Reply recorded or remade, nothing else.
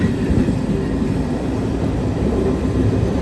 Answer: remade